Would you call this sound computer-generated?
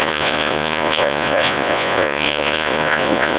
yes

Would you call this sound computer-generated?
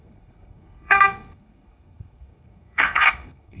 yes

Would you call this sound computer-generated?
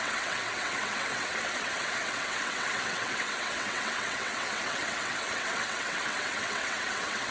yes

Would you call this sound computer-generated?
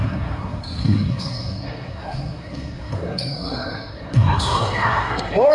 yes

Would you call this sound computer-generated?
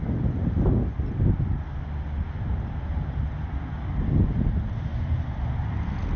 no